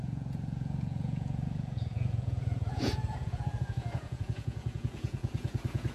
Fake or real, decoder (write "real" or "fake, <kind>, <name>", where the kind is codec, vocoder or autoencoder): fake, vocoder, Vocos